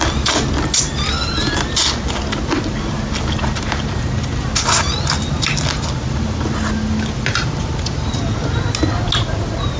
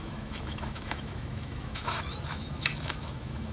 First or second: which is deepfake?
second